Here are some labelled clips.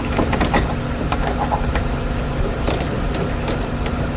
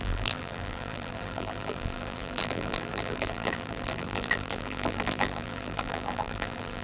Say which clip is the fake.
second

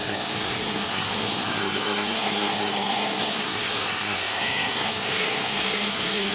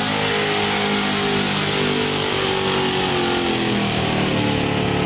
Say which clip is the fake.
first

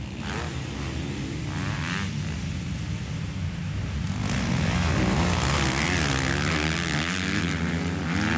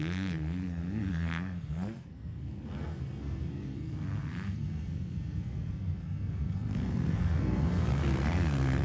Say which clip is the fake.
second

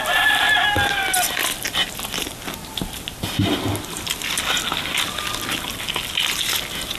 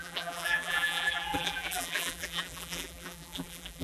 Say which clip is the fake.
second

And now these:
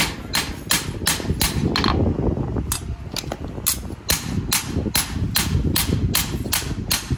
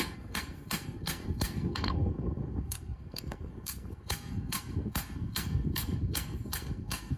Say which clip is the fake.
second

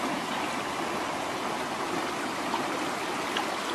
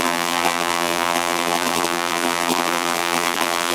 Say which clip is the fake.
second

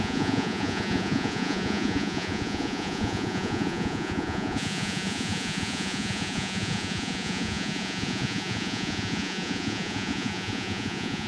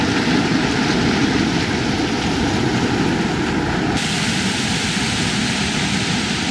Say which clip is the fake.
first